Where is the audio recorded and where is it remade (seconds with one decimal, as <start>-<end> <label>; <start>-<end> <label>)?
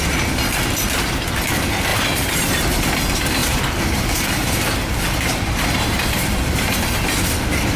0.0-1.9 recorded; 1.9-2.7 remade; 2.7-3.4 recorded; 3.4-6.8 remade; 6.8-7.8 recorded